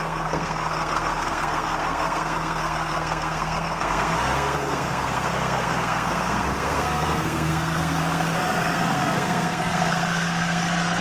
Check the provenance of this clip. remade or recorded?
remade